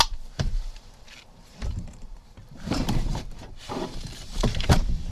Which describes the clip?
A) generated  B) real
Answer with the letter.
A